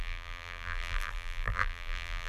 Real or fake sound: fake